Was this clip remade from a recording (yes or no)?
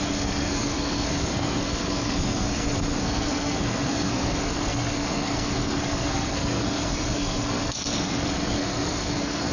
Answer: yes